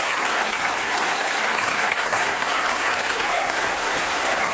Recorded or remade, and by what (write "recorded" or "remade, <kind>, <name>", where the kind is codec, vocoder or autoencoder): remade, codec, SNAC